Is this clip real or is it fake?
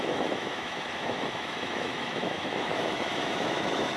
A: fake